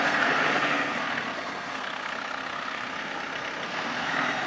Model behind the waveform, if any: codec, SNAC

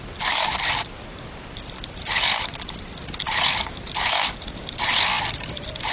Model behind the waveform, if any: none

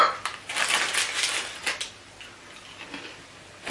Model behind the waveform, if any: none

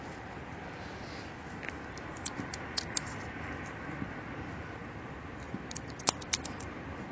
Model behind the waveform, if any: none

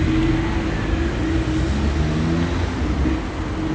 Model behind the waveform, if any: none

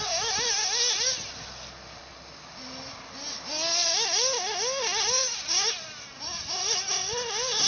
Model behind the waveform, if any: none